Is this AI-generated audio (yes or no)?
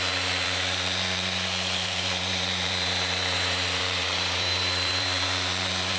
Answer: yes